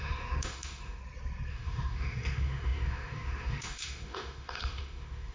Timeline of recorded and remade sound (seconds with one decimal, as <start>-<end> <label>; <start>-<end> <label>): 0.0-1.0 remade; 1.0-1.5 recorded; 1.5-5.3 remade